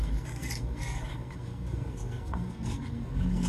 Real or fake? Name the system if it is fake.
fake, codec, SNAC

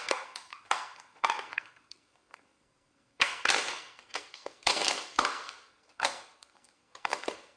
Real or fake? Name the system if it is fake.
fake, codec, SNAC